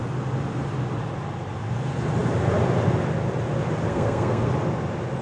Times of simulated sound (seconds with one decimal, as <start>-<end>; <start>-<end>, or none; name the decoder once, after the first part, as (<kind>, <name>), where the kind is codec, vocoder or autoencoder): 3.9-4.5 (codec, SNAC)